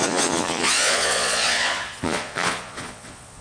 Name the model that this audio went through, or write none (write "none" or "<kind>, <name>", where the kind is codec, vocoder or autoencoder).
vocoder, Vocos